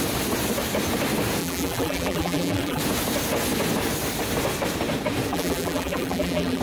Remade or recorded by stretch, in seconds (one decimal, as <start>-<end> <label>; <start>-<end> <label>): 0.0-1.4 recorded; 1.4-2.8 remade; 2.8-5.3 recorded; 5.3-6.6 remade